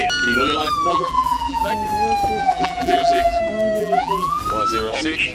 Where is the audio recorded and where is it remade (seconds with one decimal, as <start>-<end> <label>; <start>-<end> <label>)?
0.0-0.9 recorded; 0.9-1.7 remade; 1.7-2.4 recorded; 2.4-3.4 remade; 3.4-3.8 recorded; 3.8-4.4 remade; 4.4-5.3 recorded